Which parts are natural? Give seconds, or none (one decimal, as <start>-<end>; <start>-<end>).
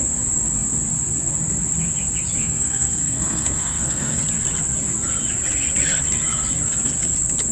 0.0-2.4; 4.2-7.5